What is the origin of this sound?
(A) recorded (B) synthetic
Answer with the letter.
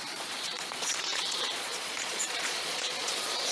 B